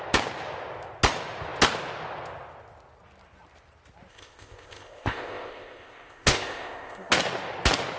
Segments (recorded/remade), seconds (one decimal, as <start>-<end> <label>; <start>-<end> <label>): 0.0-4.1 recorded; 4.1-7.1 remade; 7.1-8.0 recorded